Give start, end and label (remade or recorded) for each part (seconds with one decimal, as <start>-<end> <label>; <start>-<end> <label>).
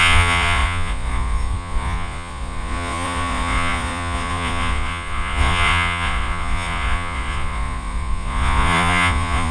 0.0-9.5 remade